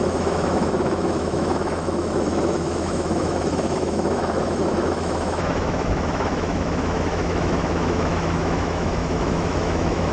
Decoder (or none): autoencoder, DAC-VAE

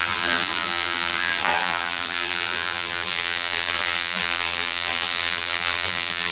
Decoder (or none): vocoder, BigVGAN v2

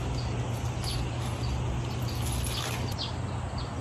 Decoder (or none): none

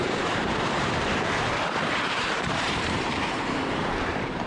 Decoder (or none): vocoder, BigVGAN v2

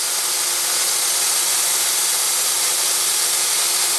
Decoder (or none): none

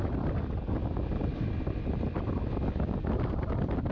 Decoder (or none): none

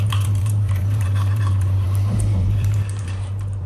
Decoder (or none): vocoder, BigVGAN v2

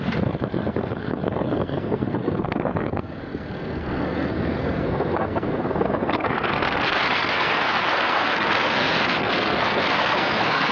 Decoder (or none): codec, SNAC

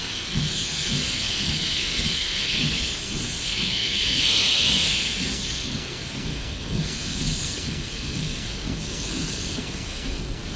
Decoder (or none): codec, SNAC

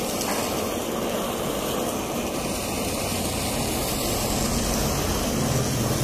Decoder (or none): none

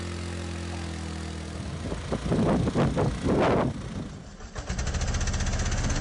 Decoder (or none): none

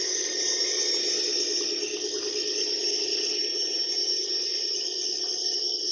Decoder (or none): none